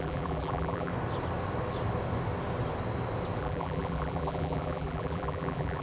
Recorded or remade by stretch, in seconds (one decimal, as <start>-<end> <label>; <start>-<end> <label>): 0.0-0.9 remade; 0.9-3.4 recorded; 3.4-5.8 remade